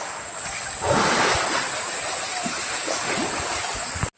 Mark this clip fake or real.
real